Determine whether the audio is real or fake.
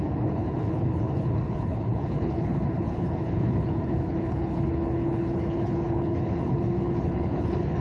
fake